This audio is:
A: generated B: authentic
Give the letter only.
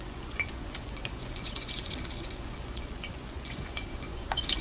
A